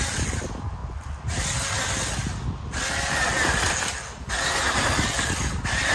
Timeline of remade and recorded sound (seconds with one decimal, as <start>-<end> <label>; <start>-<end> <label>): 0.0-5.9 recorded